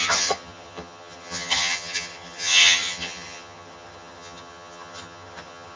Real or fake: fake